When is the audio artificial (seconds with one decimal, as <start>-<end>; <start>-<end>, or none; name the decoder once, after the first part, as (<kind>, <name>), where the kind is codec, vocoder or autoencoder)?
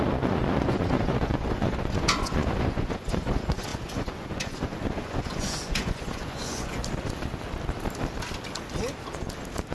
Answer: 0.0-6.8 (vocoder, Vocos)